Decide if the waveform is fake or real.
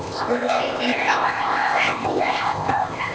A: fake